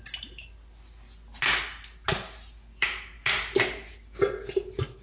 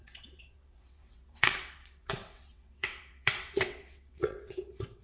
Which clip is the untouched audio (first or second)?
first